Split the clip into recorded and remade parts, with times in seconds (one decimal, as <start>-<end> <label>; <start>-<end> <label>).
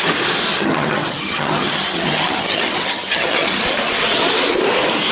0.0-0.5 recorded; 0.5-3.6 remade; 3.6-5.1 recorded